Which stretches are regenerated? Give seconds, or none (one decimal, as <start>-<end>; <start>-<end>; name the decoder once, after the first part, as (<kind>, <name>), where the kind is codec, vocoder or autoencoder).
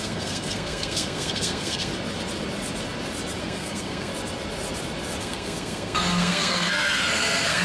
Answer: 0.0-1.9 (codec, SNAC); 3.4-4.1; 5.2-7.6